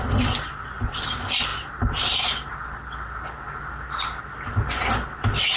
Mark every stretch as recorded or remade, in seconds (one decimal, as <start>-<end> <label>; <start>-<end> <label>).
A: 0.0-5.6 recorded